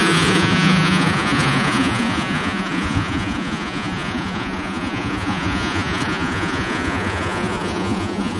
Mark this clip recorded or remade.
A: remade